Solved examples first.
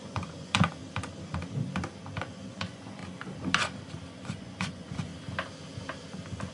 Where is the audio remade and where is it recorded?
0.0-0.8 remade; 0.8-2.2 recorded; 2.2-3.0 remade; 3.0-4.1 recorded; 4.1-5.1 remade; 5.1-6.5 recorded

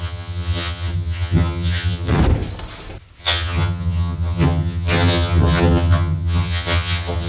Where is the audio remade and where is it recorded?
0.0-2.2 remade; 2.2-3.2 recorded; 3.2-7.3 remade